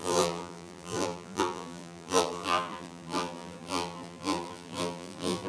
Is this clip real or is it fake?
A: fake